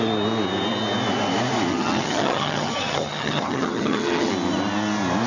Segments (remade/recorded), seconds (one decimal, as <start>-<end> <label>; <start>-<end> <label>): 0.0-1.7 recorded; 1.7-4.3 remade; 4.3-5.3 recorded